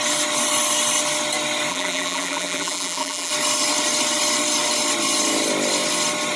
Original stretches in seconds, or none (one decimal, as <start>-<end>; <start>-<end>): 0.0-1.7; 3.3-6.4